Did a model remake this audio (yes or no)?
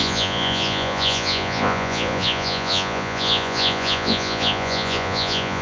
yes